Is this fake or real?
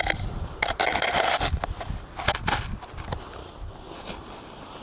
real